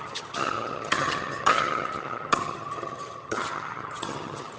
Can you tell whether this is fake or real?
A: fake